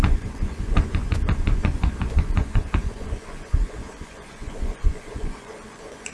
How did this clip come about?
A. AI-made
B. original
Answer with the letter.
A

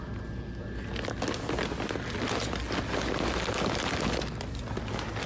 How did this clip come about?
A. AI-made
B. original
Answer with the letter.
B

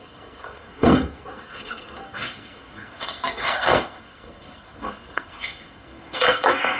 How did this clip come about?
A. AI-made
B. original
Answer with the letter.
A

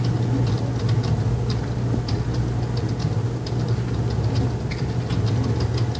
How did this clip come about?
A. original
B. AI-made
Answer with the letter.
A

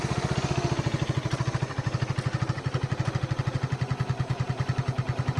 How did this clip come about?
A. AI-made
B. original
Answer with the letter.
B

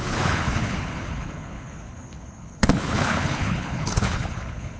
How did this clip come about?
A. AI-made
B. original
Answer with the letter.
A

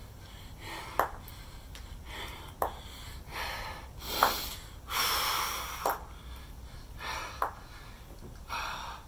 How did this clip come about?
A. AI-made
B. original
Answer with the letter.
B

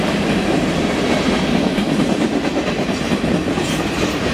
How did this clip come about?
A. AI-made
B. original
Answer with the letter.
A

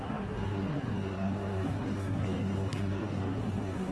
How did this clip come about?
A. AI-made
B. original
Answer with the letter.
A